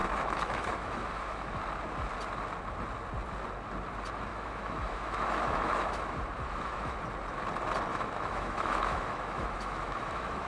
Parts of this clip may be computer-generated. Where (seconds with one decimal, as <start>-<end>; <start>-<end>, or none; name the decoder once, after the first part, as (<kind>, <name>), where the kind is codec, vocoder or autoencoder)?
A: 0.0-1.6 (autoencoder, DAC-VAE); 4.3-7.0; 7.9-10.5